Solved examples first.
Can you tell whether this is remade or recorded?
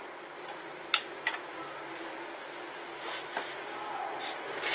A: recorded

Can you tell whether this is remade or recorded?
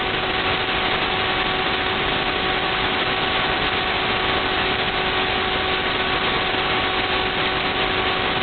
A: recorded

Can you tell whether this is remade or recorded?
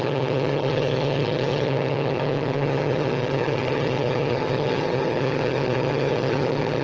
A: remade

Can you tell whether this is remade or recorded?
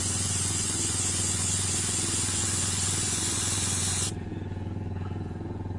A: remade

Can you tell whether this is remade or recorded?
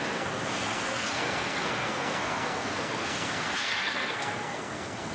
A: remade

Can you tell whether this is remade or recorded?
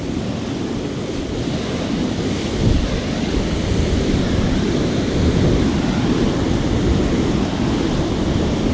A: recorded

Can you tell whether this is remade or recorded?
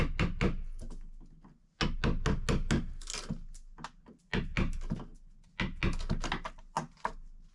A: recorded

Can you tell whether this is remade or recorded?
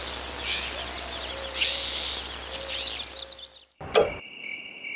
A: recorded